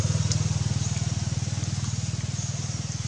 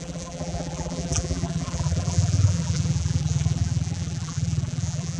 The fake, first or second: second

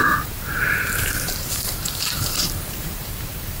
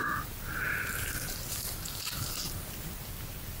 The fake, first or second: first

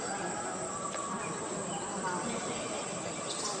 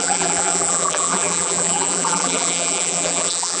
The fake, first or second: second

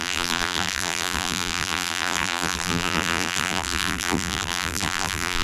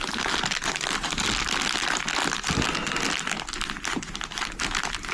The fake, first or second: first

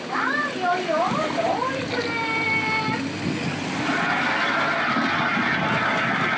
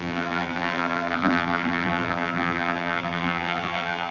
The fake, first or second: second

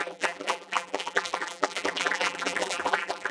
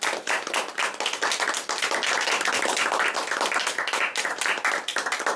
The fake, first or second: first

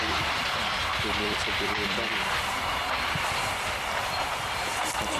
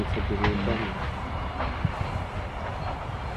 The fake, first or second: first